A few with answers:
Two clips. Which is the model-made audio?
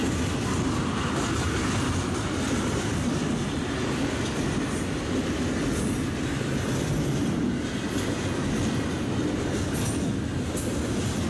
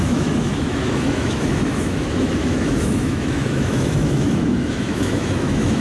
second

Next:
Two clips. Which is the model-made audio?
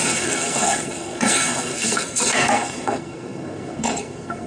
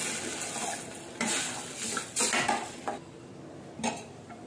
first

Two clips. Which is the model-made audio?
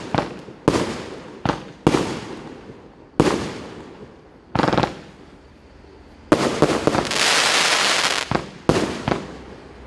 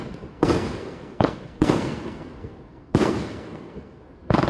second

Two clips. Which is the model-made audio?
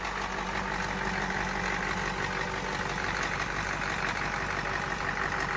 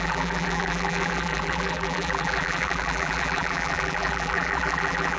second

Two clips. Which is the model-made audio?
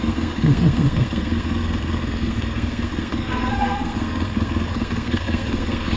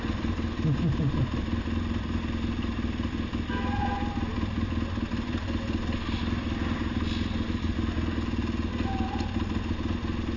first